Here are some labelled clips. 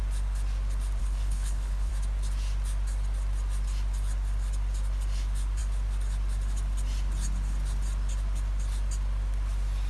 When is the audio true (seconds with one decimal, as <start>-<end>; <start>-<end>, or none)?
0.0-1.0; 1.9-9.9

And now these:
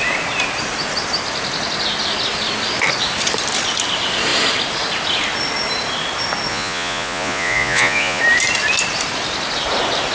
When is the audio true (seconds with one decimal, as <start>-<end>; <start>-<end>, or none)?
0.0-6.5; 8.2-10.1

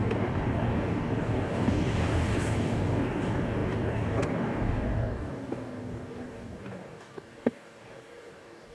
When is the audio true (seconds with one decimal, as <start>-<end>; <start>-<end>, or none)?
none